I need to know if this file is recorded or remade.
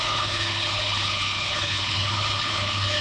remade